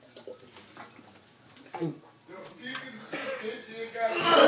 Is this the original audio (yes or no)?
yes